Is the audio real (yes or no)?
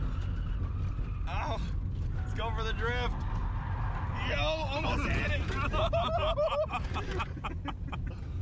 yes